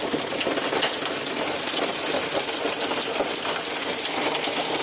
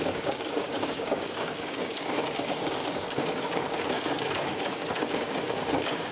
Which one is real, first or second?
first